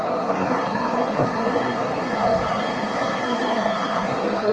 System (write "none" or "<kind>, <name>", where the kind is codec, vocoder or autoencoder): codec, SNAC